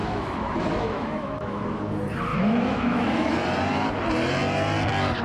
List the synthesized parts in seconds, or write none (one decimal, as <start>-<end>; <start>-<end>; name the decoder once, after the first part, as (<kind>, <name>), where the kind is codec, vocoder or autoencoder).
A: 0.0-1.8 (autoencoder, DAC-VAE); 2.3-3.3